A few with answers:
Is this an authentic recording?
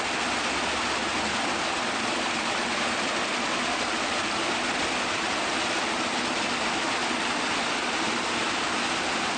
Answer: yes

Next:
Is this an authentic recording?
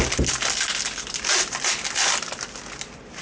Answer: yes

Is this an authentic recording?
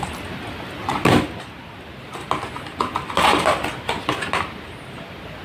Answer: yes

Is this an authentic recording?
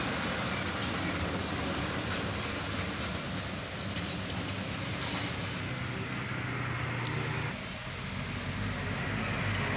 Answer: yes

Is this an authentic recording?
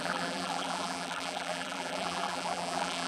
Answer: no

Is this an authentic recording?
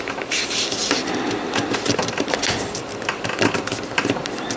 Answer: yes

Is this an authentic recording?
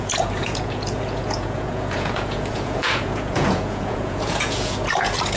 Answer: no